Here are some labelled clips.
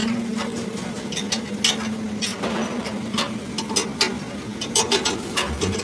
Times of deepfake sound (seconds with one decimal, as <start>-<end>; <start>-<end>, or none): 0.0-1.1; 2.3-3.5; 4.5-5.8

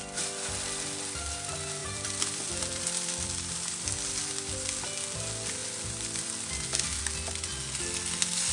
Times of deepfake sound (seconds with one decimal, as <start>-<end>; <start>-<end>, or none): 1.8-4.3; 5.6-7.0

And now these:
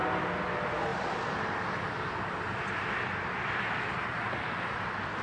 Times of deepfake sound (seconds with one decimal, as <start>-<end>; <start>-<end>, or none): 0.9-1.7